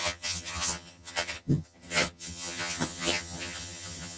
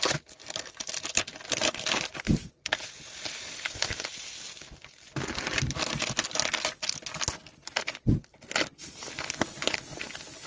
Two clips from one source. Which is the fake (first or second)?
first